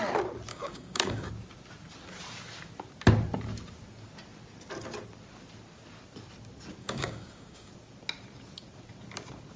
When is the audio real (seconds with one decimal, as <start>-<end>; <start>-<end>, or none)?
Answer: 0.0-0.5; 1.3-6.8; 7.7-9.6